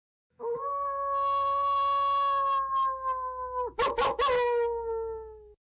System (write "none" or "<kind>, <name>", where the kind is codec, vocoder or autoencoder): autoencoder, DAC-VAE